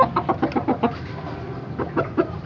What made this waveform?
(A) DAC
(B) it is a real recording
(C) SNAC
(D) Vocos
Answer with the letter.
B